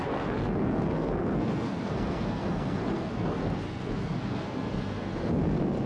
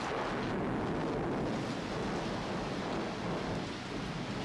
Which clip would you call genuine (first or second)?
second